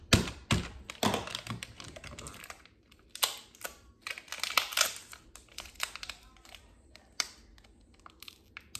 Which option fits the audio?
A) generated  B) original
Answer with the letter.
B